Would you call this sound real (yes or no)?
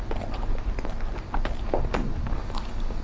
yes